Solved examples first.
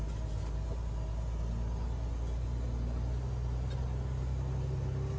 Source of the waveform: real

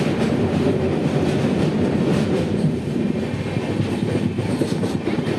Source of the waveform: real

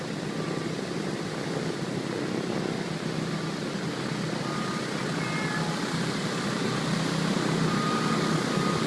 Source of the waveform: real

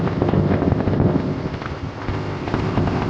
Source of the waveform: fake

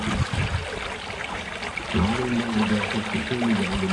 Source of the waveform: real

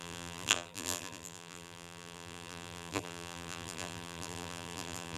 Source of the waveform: fake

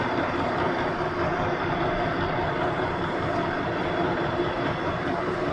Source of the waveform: fake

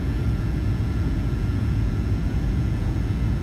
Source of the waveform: fake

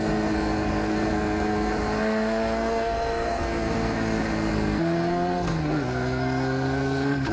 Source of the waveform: fake